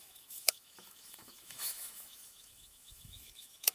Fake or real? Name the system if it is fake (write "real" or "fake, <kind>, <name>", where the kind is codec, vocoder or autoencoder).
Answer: fake, autoencoder, DAC-VAE